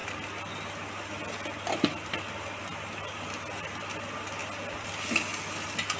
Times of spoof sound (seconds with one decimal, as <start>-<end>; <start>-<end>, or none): none